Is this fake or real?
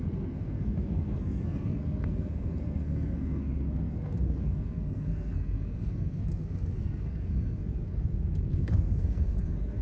fake